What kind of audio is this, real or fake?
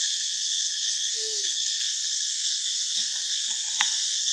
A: fake